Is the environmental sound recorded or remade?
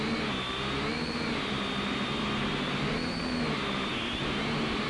recorded